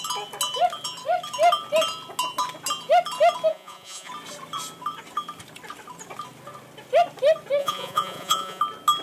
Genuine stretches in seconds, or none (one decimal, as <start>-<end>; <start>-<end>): 0.0-3.5; 4.1-7.6; 8.6-9.0